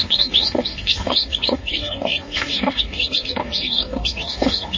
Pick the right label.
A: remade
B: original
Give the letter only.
A